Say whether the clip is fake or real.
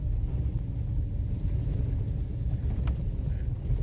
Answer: real